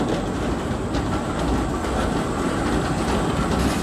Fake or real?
real